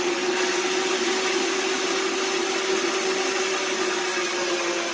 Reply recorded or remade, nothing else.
recorded